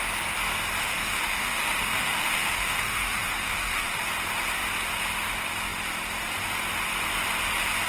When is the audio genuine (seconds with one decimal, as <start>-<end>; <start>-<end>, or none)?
0.0-0.8; 4.0-7.9